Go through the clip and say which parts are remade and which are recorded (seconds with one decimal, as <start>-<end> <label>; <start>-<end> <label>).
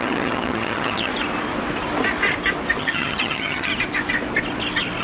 0.0-1.1 remade; 1.1-2.8 recorded; 2.8-3.7 remade; 3.7-5.0 recorded